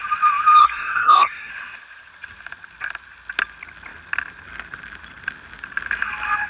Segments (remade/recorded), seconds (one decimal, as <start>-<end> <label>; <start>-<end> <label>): 0.0-0.6 recorded; 0.6-1.5 remade; 1.5-6.5 recorded